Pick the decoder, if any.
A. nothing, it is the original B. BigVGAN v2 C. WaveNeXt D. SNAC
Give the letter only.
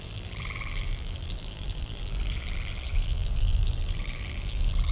B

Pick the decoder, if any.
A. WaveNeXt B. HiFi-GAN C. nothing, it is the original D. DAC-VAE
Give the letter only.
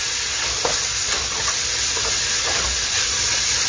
C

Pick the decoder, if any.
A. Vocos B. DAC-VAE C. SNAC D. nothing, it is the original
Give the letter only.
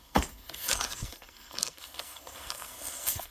C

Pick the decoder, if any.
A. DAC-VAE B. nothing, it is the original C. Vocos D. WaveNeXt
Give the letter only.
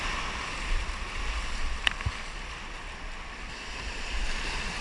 B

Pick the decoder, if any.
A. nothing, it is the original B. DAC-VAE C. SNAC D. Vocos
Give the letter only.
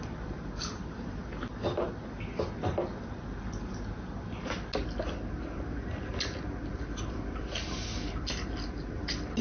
A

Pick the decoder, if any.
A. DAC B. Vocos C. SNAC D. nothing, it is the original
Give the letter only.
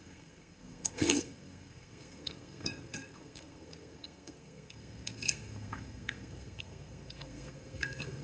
C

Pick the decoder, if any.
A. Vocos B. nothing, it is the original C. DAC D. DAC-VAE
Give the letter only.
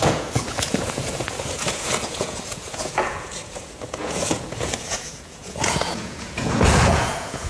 A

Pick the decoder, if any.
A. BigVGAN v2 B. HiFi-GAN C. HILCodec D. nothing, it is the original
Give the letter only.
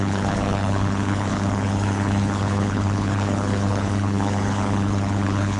C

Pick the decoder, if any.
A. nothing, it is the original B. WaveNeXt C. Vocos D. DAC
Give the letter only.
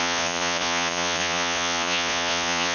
C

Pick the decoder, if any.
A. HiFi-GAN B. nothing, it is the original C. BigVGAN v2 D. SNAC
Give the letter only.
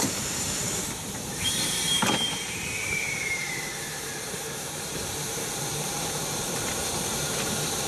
C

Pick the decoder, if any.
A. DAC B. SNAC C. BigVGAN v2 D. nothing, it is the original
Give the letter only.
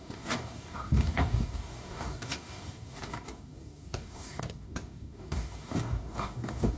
A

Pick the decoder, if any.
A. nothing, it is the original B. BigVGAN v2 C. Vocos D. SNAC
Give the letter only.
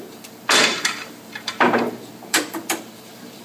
B